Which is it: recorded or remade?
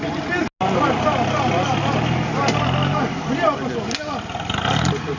recorded